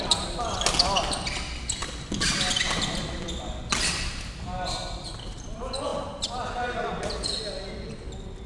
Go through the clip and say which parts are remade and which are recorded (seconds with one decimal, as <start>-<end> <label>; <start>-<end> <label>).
0.0-8.5 recorded